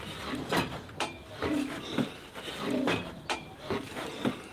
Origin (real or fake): fake